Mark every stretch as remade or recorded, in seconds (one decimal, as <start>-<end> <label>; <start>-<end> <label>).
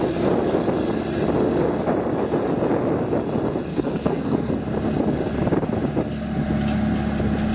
0.0-3.7 recorded; 3.7-4.5 remade; 4.5-7.5 recorded